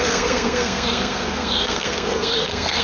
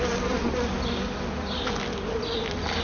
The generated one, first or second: first